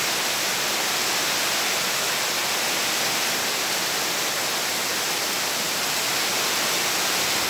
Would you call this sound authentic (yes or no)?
yes